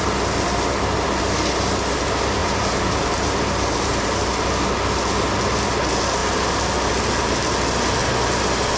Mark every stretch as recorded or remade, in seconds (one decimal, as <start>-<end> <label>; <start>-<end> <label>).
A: 0.0-2.4 recorded; 2.4-4.3 remade; 4.3-8.8 recorded